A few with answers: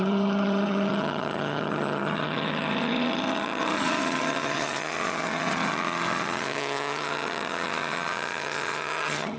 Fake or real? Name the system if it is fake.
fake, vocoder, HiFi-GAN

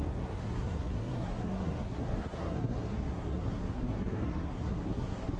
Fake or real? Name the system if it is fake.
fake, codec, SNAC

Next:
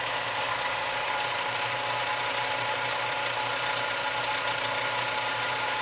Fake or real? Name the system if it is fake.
real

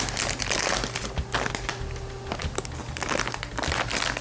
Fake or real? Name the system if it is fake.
real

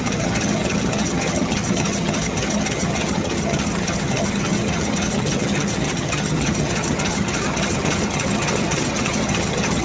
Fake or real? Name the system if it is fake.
fake, vocoder, HiFi-GAN